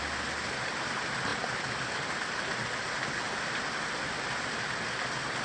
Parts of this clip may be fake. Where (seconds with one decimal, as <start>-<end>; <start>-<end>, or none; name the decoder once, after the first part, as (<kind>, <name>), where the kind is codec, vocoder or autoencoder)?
none